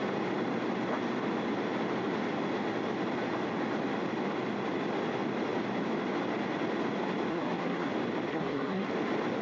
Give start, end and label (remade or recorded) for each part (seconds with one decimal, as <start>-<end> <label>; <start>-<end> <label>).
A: 0.0-7.3 recorded; 7.3-7.9 remade; 7.9-8.3 recorded; 8.3-8.9 remade; 8.9-9.4 recorded